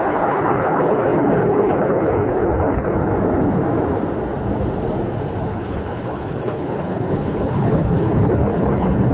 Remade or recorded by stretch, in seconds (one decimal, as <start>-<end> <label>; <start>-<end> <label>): 0.0-3.1 remade; 3.1-5.4 recorded; 5.4-9.1 remade